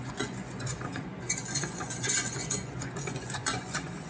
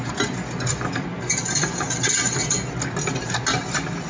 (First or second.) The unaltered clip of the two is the second